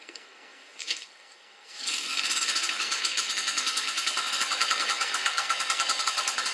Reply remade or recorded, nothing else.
remade